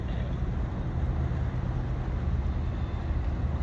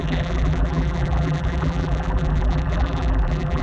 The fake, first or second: second